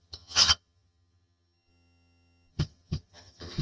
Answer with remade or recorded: remade